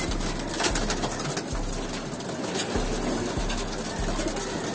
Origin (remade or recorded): recorded